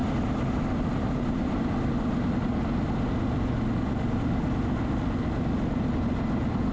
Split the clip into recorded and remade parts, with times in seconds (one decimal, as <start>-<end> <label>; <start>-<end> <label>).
0.0-6.7 recorded